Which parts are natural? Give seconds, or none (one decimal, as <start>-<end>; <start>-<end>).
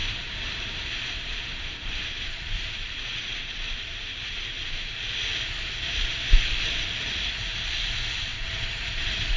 5.0-8.3